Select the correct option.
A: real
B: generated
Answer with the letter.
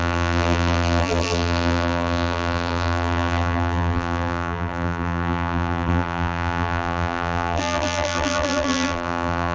B